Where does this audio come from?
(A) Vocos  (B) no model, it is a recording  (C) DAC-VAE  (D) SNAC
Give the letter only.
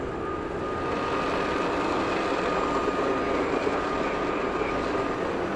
B